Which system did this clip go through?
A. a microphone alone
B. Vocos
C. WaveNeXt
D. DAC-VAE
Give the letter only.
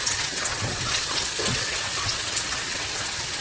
C